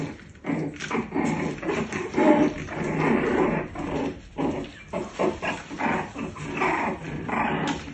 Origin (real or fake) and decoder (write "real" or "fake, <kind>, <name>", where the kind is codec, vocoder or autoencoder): real